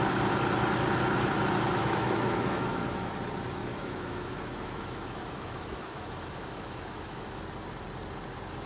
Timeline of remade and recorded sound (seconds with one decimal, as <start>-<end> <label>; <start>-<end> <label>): 0.0-1.8 recorded; 1.8-3.1 remade; 3.1-3.6 recorded; 3.6-7.4 remade; 7.4-8.7 recorded